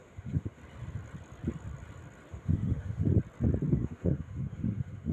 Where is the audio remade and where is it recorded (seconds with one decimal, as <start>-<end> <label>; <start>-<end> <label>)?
0.0-0.6 remade; 0.6-2.3 recorded; 2.3-3.1 remade; 3.1-3.7 recorded; 3.7-5.1 remade

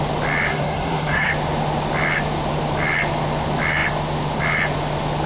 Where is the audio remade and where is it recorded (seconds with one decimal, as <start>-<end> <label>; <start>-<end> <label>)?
0.0-0.5 recorded; 0.5-1.3 remade; 1.3-5.3 recorded

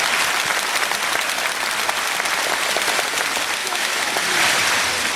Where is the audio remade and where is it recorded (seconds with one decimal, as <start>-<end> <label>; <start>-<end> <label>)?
0.0-3.6 recorded; 3.6-4.1 remade; 4.1-5.2 recorded

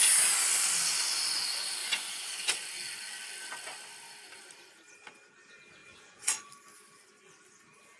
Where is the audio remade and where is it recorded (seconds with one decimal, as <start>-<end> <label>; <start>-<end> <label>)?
0.0-1.8 recorded; 1.8-2.7 remade; 2.7-5.8 recorded; 5.8-6.5 remade; 6.5-8.0 recorded

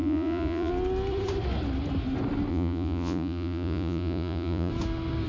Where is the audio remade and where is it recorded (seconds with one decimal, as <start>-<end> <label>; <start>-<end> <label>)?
0.0-0.7 remade; 0.7-2.5 recorded; 2.5-4.7 remade; 4.7-5.3 recorded

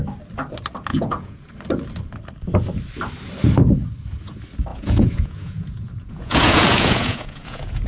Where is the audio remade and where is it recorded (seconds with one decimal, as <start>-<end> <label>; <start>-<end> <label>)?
0.0-0.9 recorded; 0.9-1.5 remade; 1.5-4.7 recorded; 4.7-7.9 remade

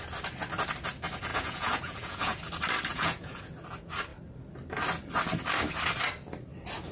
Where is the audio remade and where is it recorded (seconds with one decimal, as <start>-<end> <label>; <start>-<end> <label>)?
0.0-1.3 recorded; 1.3-2.4 remade; 2.4-2.9 recorded; 2.9-3.5 remade; 3.5-6.9 recorded